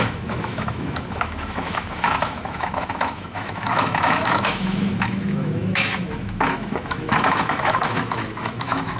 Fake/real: fake